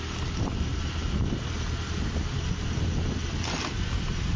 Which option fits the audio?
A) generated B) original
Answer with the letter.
A